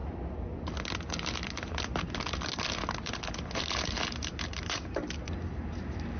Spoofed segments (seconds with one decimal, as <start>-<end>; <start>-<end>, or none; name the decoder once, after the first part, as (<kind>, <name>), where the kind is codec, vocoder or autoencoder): none